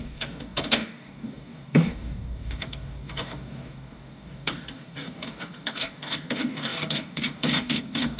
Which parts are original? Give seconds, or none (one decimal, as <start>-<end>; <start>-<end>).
none